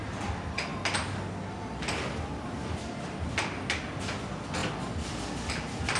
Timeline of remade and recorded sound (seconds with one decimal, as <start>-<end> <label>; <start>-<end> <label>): 0.0-0.7 remade; 0.7-2.6 recorded; 2.6-6.0 remade